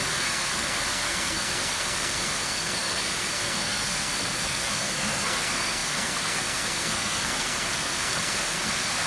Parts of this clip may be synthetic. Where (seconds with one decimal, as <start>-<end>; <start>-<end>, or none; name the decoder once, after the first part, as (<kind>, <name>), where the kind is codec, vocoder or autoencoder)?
0.0-9.1 (codec, SNAC)